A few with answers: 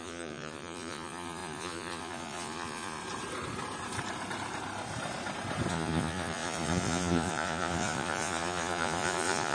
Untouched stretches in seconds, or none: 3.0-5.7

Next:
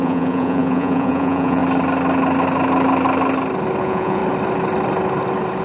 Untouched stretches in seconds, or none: 1.6-3.8; 4.2-5.6

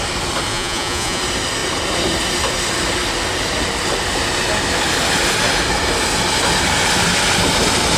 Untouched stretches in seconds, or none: 0.0-0.5; 1.2-8.0

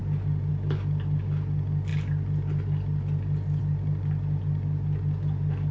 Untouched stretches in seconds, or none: 0.0-5.7